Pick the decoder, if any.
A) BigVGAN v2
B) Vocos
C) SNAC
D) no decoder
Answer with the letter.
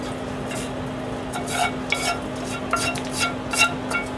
D